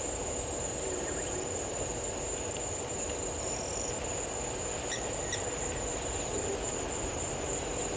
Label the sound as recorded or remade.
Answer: recorded